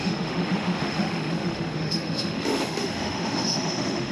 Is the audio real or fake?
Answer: fake